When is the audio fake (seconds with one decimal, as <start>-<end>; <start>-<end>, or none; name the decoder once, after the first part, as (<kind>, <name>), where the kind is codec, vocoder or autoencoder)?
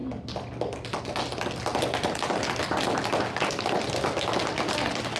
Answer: none